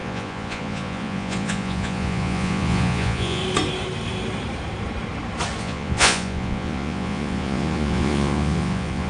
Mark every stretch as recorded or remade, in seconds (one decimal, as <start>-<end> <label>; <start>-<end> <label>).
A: 0.0-3.4 remade; 3.4-5.6 recorded; 5.6-9.1 remade